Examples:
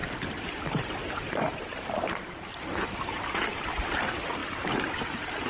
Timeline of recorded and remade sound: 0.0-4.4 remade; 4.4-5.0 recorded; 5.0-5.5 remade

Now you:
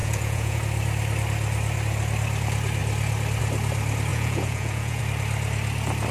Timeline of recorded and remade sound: 0.0-0.6 remade; 0.6-4.1 recorded; 4.1-5.0 remade; 5.0-6.1 recorded

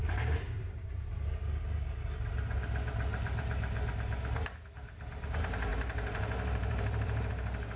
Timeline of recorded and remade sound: 0.0-1.2 remade; 1.2-3.1 recorded; 3.1-3.9 remade; 3.9-5.7 recorded; 5.7-7.3 remade; 7.3-7.8 recorded

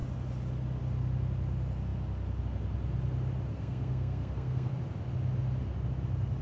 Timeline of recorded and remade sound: 0.0-3.5 recorded; 3.5-4.7 remade; 4.7-6.4 recorded

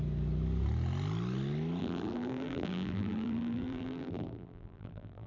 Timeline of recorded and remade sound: 0.0-1.8 recorded; 1.8-5.3 remade

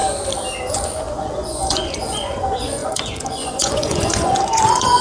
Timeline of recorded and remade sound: 0.0-0.7 recorded; 0.7-5.0 remade

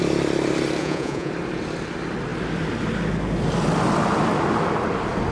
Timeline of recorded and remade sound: 0.0-0.8 recorded; 0.8-1.3 remade; 1.3-5.3 recorded

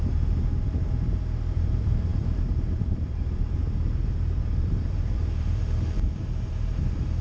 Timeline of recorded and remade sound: 0.0-7.2 remade